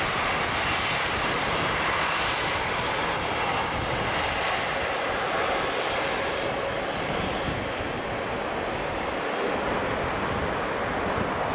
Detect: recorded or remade recorded